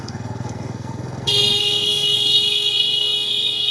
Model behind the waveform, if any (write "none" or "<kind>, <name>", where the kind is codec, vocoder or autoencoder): codec, SNAC